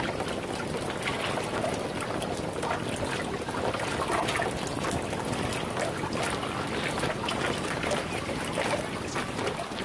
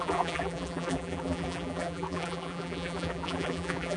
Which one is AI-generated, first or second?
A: second